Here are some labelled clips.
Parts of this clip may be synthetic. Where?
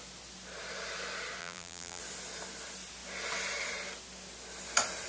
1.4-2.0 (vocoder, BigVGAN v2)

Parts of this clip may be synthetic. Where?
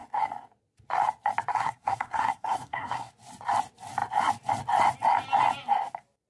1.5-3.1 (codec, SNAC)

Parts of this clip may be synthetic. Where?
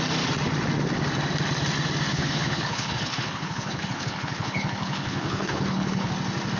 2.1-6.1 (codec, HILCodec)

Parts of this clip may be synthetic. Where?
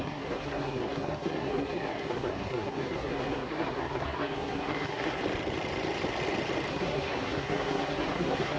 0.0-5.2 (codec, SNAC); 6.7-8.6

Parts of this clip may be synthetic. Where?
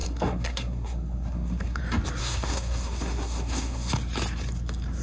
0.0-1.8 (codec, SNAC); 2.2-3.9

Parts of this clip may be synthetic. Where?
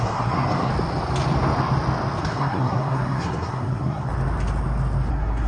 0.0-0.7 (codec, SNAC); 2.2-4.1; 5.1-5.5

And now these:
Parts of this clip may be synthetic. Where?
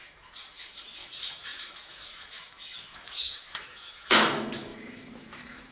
0.0-5.7 (autoencoder, DAC-VAE)